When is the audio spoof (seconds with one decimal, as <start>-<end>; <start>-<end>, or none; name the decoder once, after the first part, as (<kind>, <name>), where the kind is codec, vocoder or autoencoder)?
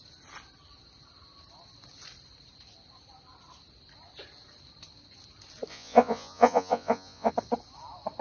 5.7-7.3 (vocoder, Vocos)